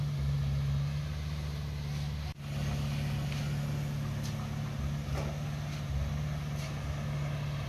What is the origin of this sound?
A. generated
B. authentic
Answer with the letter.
B